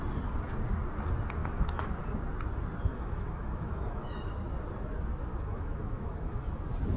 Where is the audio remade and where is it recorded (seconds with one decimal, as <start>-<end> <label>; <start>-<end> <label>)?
0.0-1.4 recorded; 1.4-2.0 remade; 2.0-2.9 recorded; 2.9-4.4 remade; 4.4-5.3 recorded; 5.3-6.5 remade; 6.5-7.0 recorded